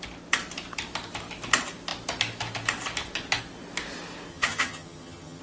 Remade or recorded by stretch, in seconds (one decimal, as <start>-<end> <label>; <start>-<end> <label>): 0.0-4.3 recorded; 4.3-5.4 remade